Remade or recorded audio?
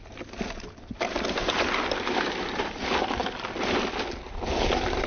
recorded